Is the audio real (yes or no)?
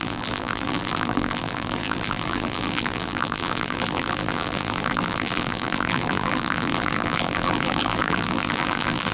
no